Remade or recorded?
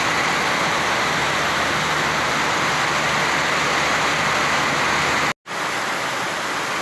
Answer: recorded